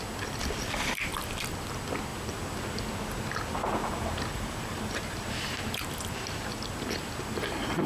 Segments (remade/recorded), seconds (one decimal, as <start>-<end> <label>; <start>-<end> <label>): 0.0-3.8 recorded; 3.8-5.6 remade; 5.6-7.9 recorded